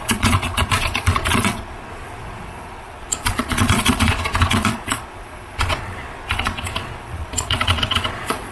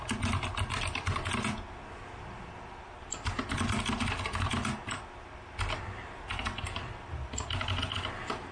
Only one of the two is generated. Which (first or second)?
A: first